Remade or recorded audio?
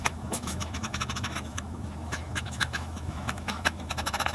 remade